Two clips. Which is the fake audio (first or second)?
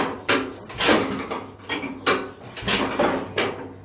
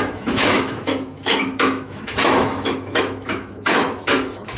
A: second